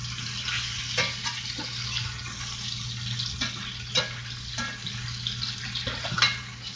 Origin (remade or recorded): recorded